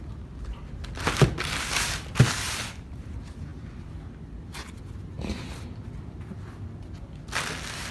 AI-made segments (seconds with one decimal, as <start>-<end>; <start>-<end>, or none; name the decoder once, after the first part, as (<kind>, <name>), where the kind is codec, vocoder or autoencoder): none